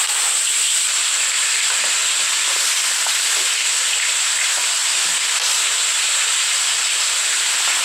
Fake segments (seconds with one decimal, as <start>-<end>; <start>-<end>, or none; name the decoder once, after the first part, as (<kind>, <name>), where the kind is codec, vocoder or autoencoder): 0.5-1.2 (vocoder, BigVGAN v2); 2.0-3.0; 4.8-5.7